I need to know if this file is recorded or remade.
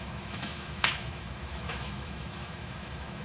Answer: remade